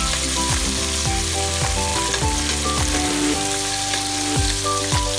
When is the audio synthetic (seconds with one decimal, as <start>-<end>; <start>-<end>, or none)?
none